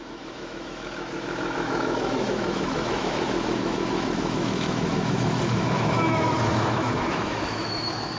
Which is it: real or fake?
fake